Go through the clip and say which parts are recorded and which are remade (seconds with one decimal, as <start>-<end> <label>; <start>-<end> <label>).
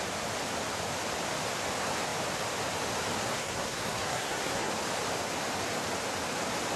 0.0-3.2 recorded; 3.2-4.7 remade; 4.7-6.8 recorded